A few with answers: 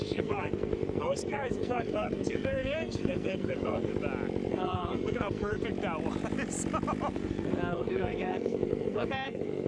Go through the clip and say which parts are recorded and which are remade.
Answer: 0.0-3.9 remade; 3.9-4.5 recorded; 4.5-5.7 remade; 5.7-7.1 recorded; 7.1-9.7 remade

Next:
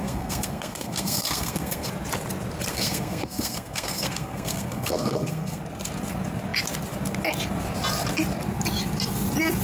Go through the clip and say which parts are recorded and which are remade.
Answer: 0.0-1.9 remade; 1.9-2.7 recorded; 2.7-5.6 remade; 5.6-9.6 recorded

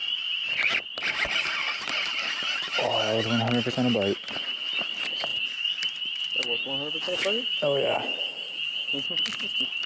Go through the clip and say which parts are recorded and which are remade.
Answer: 0.0-9.9 recorded

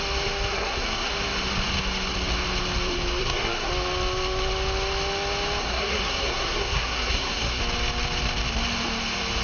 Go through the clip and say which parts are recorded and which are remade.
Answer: 0.0-0.5 recorded; 0.5-1.1 remade; 1.1-3.2 recorded; 3.2-3.7 remade; 3.7-5.6 recorded; 5.6-7.6 remade; 7.6-9.4 recorded